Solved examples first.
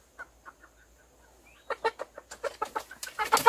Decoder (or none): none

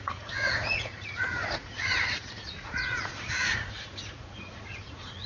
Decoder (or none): vocoder, Vocos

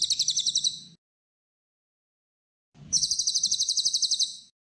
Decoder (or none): vocoder, BigVGAN v2